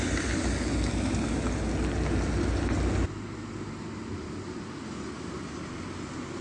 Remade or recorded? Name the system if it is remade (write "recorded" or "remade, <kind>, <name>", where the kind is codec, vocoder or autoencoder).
recorded